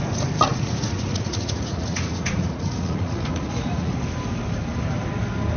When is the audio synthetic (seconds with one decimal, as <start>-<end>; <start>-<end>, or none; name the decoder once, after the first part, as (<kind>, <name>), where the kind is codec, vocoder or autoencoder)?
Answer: 0.5-3.9 (vocoder, Vocos)